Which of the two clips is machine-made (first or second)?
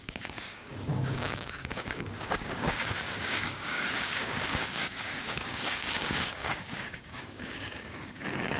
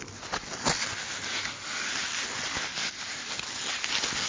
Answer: first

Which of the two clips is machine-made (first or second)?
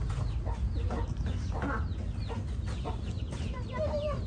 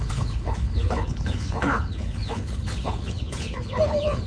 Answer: second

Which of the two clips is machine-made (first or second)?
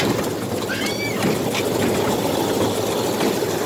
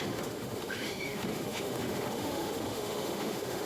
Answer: second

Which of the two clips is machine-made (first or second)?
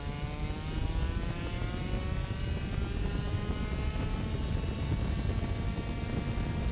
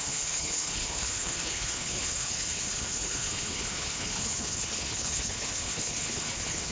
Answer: second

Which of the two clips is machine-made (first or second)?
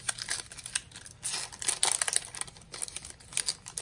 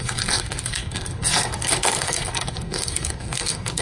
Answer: second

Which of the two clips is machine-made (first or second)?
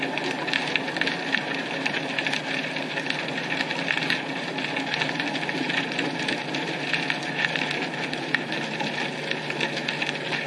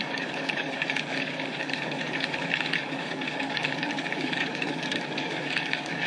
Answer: second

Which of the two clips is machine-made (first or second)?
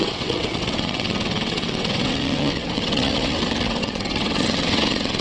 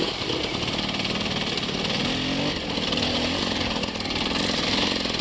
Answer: first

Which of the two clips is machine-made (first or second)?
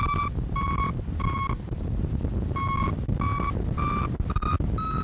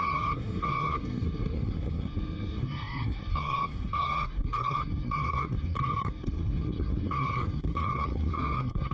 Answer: second